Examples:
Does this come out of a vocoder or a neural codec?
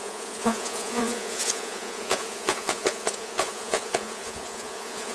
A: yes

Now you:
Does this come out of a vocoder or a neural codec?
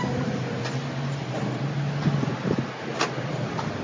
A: no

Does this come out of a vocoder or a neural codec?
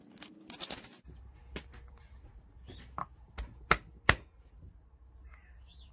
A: no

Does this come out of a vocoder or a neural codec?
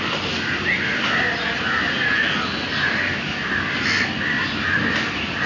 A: no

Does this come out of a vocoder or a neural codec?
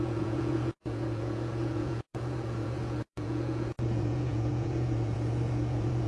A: yes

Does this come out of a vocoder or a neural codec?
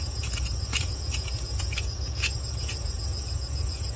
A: yes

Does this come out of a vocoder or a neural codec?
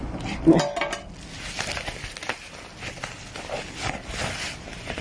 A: no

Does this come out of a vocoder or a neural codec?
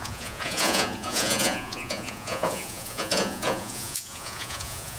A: yes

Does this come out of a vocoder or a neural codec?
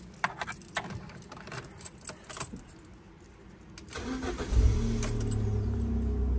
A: no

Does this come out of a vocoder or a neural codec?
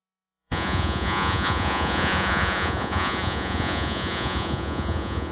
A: yes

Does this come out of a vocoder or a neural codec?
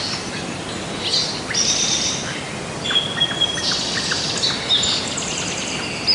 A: no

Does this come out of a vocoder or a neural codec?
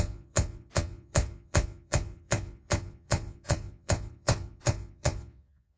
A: yes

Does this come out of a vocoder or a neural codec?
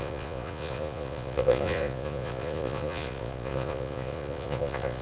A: yes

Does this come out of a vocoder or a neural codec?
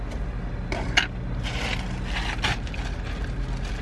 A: no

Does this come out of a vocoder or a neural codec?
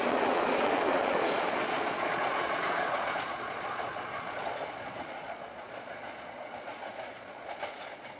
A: yes